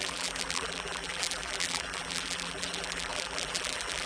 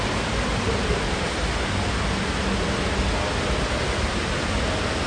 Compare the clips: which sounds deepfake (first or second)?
first